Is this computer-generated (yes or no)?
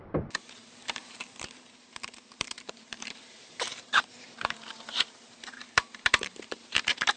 yes